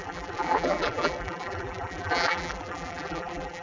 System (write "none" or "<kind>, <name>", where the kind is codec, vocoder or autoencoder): vocoder, BigVGAN v2